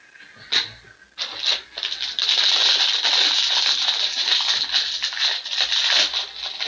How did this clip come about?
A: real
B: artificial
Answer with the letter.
A